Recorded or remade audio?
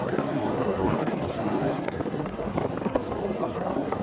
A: remade